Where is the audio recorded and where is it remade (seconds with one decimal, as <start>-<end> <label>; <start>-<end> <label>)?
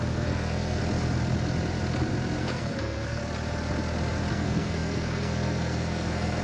0.0-0.8 remade; 0.8-2.4 recorded; 2.4-3.2 remade; 3.2-4.3 recorded; 4.3-6.4 remade